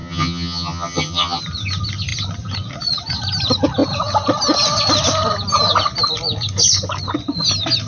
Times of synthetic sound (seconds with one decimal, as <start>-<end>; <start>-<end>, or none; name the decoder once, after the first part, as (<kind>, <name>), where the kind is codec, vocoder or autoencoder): 0.0-1.4 (vocoder, HiFi-GAN)